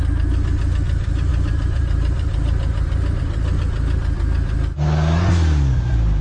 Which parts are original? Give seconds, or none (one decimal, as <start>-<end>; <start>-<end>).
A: 0.0-1.3; 3.2-6.2